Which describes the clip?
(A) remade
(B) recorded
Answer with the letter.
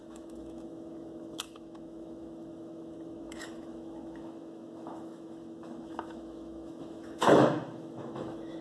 A